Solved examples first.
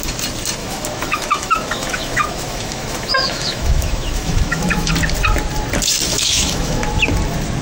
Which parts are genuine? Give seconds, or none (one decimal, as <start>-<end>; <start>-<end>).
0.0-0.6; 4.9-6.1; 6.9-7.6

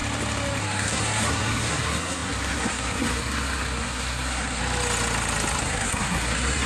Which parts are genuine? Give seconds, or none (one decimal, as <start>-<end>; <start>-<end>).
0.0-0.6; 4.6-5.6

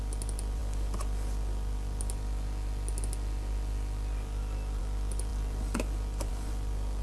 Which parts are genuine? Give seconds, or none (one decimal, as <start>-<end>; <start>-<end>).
0.0-7.0

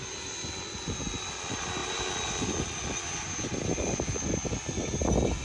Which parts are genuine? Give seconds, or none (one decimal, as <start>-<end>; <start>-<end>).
0.0-5.4

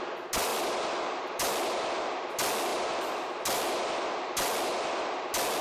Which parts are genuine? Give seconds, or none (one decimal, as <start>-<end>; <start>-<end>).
0.0-0.5; 1.5-2.7; 3.6-5.6